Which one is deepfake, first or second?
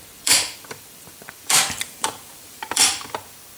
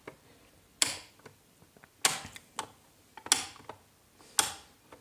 first